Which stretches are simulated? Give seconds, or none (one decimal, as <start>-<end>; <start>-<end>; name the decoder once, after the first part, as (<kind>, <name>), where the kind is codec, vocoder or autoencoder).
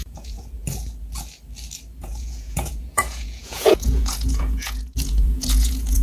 0.0-0.6 (vocoder, Vocos); 2.0-6.0